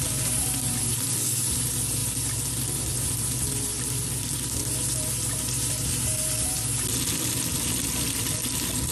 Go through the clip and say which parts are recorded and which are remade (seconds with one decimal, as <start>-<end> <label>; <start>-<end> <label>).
0.0-8.9 recorded